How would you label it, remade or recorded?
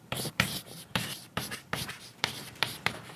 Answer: remade